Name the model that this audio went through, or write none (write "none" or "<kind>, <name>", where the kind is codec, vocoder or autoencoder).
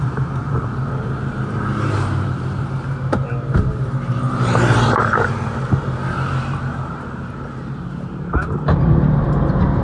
vocoder, BigVGAN v2